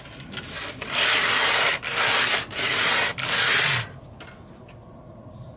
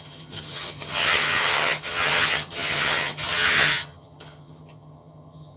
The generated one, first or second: second